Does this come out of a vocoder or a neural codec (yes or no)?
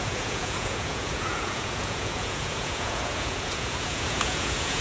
yes